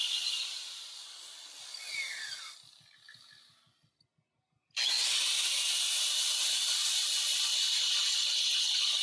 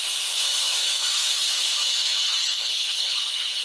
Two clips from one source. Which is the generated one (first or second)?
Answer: second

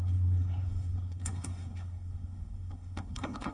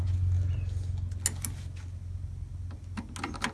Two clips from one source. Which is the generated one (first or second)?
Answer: first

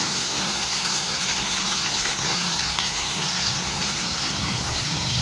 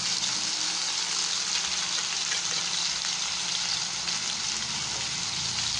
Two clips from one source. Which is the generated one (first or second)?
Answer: first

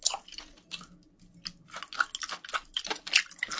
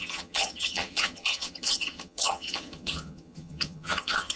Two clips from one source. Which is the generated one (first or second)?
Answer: second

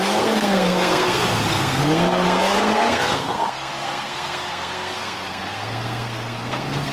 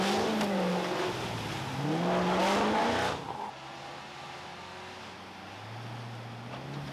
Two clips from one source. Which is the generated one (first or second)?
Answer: first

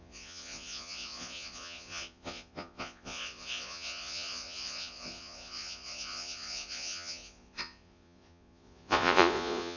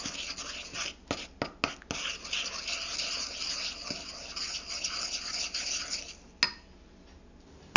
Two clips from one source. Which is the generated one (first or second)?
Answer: first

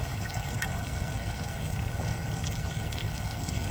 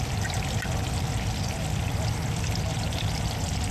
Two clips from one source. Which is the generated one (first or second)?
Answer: first